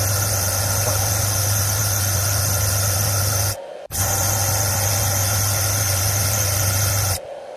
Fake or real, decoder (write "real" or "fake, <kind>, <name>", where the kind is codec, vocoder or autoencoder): real